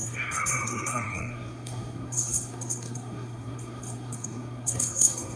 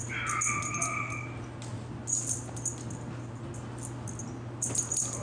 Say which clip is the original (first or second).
second